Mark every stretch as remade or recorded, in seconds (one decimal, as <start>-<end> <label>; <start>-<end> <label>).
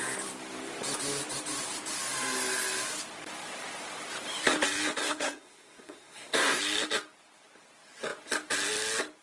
0.0-5.0 recorded; 5.0-6.6 remade; 6.6-9.2 recorded